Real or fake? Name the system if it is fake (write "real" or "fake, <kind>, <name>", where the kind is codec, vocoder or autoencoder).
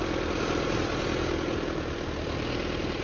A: real